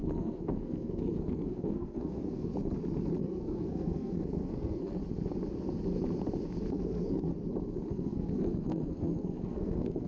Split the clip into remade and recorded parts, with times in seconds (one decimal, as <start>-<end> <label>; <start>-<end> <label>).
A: 0.0-2.5 remade; 2.5-3.2 recorded; 3.2-5.0 remade; 5.0-6.7 recorded; 6.7-7.3 remade; 7.3-7.9 recorded; 7.9-10.1 remade